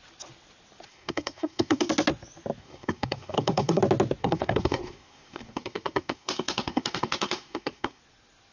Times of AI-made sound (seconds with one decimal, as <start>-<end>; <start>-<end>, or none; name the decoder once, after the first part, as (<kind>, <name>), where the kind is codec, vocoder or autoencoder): 0.9-1.9 (codec, SNAC); 2.6-3.8; 4.2-8.0